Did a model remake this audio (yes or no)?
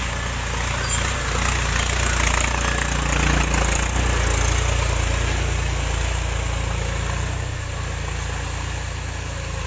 no